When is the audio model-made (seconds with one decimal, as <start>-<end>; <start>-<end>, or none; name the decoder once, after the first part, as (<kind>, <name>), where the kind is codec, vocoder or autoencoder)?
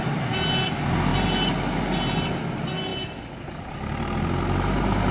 none